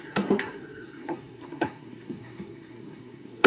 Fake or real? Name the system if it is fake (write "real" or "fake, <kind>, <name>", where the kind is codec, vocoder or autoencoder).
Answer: fake, codec, SNAC